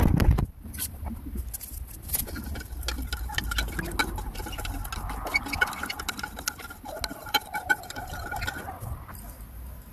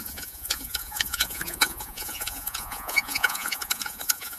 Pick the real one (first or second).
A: first